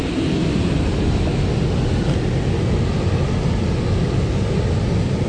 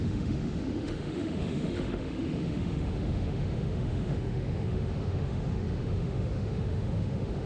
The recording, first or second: first